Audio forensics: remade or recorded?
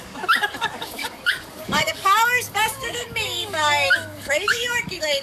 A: remade